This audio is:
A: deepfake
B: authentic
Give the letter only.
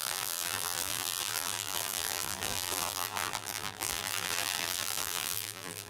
A